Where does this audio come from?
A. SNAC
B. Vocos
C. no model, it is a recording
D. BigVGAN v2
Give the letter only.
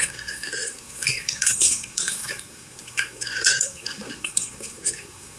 A